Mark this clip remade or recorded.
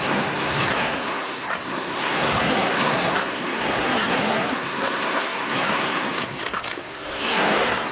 remade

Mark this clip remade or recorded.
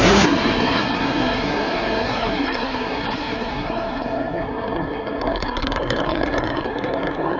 remade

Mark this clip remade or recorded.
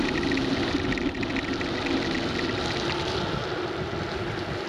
recorded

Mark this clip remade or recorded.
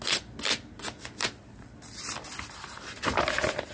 recorded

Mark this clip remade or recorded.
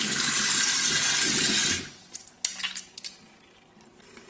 recorded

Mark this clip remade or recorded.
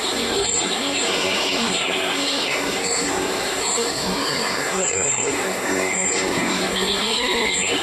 remade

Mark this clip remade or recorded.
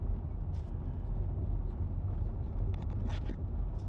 recorded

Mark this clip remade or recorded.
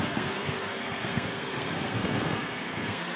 remade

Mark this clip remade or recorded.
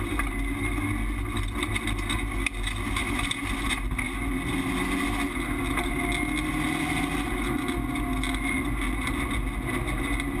recorded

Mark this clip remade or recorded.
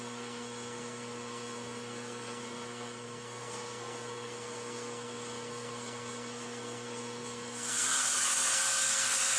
remade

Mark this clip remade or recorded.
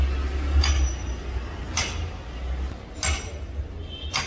recorded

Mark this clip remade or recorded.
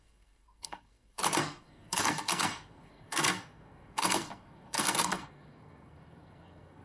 remade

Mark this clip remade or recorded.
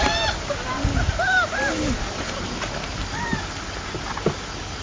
recorded